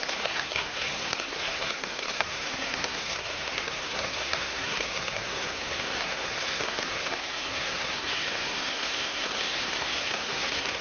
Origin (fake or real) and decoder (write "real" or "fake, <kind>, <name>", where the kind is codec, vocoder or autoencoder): fake, codec, SNAC